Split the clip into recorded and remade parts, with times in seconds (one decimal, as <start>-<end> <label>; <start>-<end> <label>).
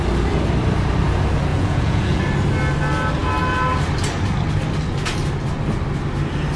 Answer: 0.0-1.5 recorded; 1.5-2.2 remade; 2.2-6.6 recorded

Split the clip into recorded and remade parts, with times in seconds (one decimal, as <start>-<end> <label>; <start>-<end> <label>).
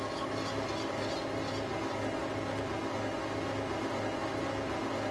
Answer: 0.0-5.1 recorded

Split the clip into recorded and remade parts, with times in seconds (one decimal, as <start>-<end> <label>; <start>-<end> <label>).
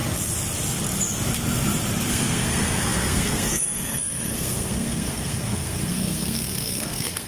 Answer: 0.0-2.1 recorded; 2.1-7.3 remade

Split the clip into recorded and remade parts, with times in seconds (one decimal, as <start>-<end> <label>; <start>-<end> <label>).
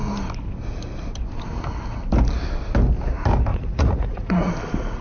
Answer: 0.0-3.5 recorded; 3.5-4.5 remade; 4.5-5.0 recorded